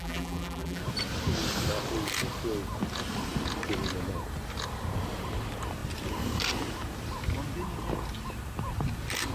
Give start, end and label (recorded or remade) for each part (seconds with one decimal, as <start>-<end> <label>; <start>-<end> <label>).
0.0-0.8 remade; 0.8-9.3 recorded